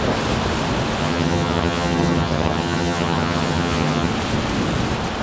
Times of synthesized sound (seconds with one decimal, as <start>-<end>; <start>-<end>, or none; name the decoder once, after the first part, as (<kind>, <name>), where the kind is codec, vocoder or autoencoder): 1.0-4.1 (vocoder, HiFi-GAN)